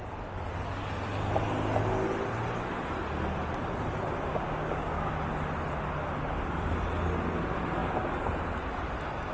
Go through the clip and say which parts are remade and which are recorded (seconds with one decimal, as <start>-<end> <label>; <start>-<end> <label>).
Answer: 0.0-4.3 recorded; 4.3-5.2 remade; 5.2-9.3 recorded